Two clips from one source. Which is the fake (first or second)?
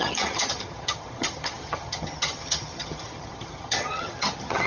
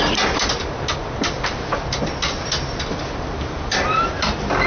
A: first